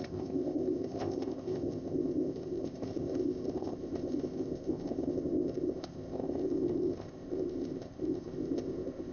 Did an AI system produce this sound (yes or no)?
yes